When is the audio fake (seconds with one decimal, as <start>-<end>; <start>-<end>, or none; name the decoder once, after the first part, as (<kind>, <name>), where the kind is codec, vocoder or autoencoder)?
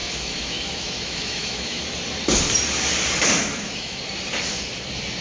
0.0-1.8 (autoencoder, DAC-VAE); 3.4-4.0